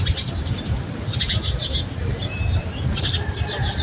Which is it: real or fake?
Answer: fake